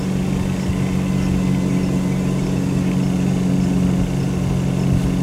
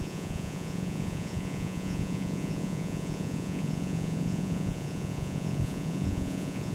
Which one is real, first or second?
first